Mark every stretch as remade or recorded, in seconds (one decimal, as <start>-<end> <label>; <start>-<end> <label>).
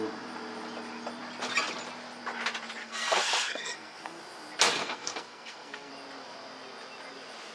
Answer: 0.0-2.8 recorded; 2.8-4.2 remade; 4.2-4.8 recorded; 4.8-5.9 remade; 5.9-7.5 recorded